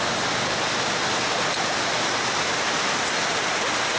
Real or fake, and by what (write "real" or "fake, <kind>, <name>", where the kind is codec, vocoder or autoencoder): real